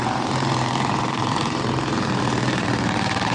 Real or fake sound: fake